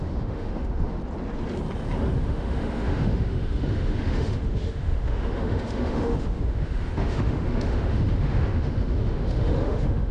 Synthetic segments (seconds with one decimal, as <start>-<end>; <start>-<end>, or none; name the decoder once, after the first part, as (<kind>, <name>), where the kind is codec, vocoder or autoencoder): 0.0-1.0 (autoencoder, DAC-VAE); 2.2-10.1